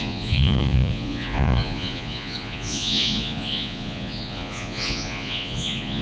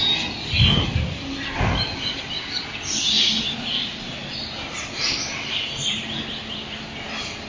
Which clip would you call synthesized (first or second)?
first